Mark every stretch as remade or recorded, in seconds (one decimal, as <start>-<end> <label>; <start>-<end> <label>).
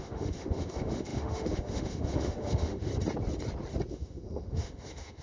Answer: 0.0-2.9 remade; 2.9-3.9 recorded; 3.9-5.2 remade